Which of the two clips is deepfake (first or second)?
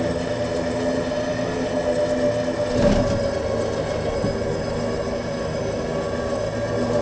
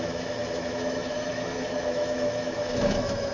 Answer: second